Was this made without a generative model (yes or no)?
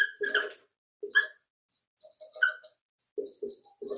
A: yes